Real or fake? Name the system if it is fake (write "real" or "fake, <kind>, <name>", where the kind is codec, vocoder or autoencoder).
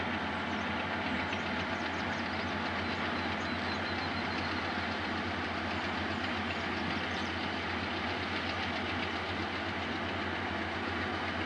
real